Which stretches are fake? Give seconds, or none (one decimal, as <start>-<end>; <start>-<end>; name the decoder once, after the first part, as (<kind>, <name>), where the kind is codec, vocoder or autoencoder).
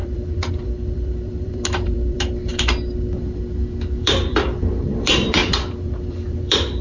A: 0.0-2.5 (vocoder, BigVGAN v2); 4.0-6.8